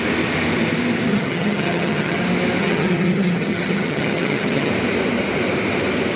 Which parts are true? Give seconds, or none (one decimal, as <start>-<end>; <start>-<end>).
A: 0.0-1.1; 2.2-2.6; 4.7-6.2